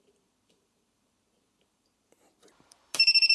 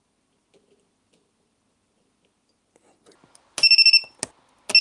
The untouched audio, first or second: second